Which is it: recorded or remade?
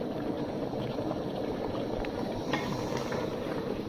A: remade